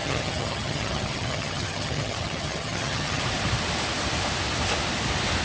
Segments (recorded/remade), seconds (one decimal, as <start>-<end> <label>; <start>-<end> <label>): 0.0-3.2 remade; 3.2-5.4 recorded